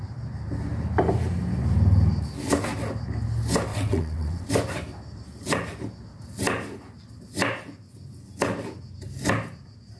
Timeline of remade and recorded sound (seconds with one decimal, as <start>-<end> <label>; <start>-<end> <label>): 0.0-3.7 recorded; 3.7-4.5 remade; 4.5-10.0 recorded